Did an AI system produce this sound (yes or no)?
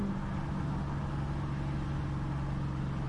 no